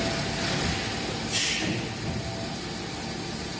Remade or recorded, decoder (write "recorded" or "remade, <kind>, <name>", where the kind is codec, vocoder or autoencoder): recorded